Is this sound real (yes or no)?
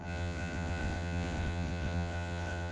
no